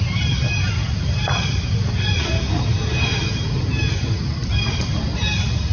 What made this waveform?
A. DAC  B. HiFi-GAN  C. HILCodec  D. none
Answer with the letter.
D